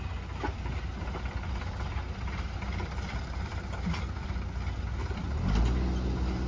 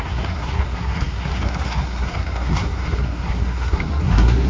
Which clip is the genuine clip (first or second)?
first